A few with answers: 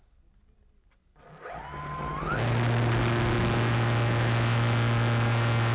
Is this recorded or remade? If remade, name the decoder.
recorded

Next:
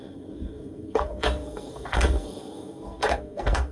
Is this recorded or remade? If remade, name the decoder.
remade, codec, SNAC